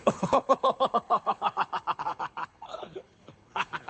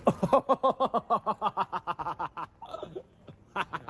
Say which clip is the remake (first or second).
first